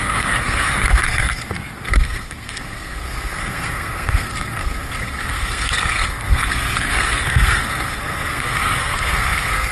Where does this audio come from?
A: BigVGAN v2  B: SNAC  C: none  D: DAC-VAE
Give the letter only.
B